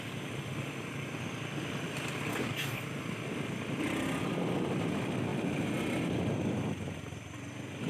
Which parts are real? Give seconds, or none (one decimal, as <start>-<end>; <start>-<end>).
0.0-2.3; 2.8-7.9